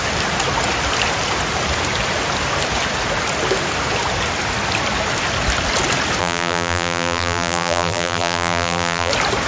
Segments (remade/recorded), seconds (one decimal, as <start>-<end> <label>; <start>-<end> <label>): 0.0-6.2 recorded; 6.2-9.1 remade; 9.1-9.5 recorded